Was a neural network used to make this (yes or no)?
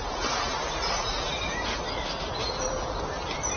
no